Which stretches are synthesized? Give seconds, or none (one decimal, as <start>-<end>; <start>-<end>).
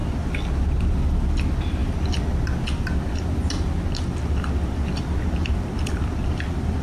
none